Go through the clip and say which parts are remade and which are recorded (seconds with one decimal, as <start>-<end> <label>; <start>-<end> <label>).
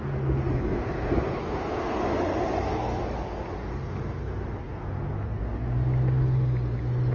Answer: 0.0-7.1 recorded